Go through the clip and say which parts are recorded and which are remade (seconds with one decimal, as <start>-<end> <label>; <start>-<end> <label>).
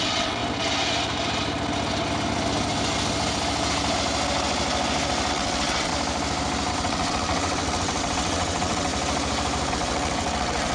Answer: 0.0-0.4 remade; 0.4-5.3 recorded; 5.3-5.9 remade; 5.9-6.7 recorded; 6.7-8.9 remade; 8.9-9.7 recorded; 9.7-10.7 remade